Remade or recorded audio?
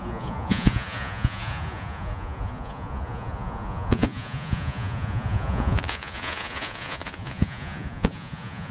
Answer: remade